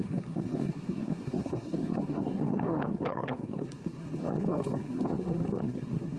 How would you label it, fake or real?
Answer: fake